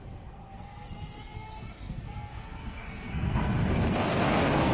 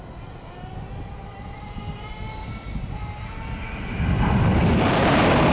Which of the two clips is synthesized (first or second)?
first